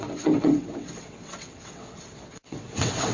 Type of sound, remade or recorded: remade